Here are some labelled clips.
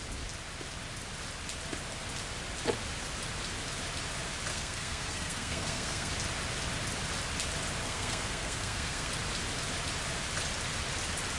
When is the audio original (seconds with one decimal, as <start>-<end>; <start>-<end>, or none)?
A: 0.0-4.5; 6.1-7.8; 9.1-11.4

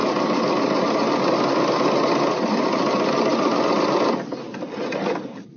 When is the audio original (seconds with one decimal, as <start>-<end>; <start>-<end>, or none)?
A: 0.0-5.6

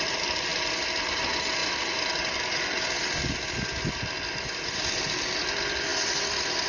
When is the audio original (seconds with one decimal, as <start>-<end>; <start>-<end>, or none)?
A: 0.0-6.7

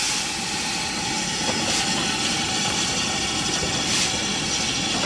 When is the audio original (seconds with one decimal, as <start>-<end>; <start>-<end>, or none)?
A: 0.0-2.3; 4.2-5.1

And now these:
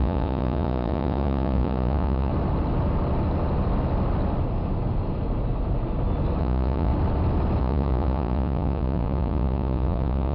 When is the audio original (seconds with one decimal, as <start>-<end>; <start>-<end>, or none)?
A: 2.3-6.4; 6.9-7.6

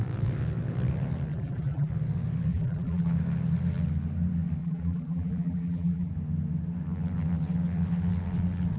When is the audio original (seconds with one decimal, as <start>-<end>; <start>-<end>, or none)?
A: 0.0-1.3; 1.9-2.5; 3.1-4.6; 6.1-8.8